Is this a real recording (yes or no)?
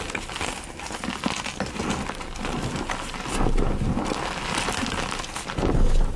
yes